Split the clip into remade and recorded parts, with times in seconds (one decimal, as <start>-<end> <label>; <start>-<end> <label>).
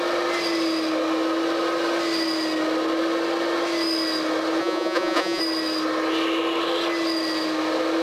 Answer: 0.0-4.6 recorded; 4.6-5.4 remade; 5.4-8.0 recorded